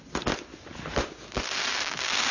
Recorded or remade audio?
recorded